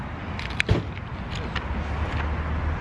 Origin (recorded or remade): recorded